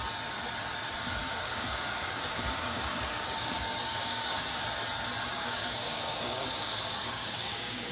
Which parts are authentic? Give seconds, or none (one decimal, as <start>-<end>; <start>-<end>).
0.0-1.4; 4.5-5.3